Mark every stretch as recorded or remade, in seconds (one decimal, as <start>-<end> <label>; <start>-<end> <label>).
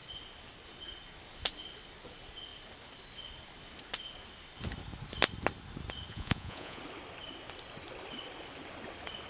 0.0-6.1 recorded; 6.1-6.8 remade; 6.8-9.3 recorded